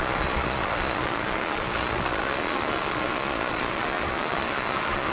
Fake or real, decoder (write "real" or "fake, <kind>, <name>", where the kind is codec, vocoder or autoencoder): fake, vocoder, Vocos